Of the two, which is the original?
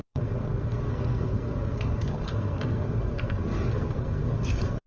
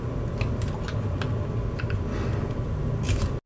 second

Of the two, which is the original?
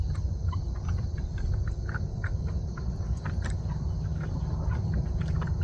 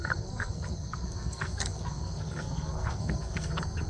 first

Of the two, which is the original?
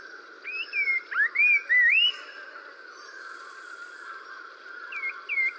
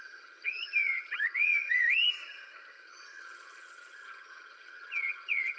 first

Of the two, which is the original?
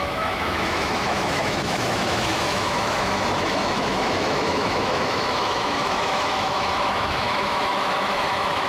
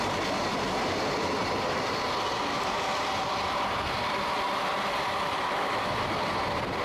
second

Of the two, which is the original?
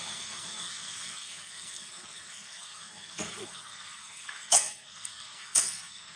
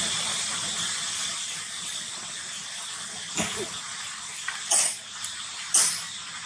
second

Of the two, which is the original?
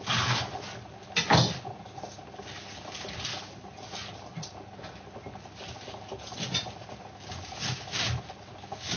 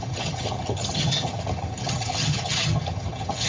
first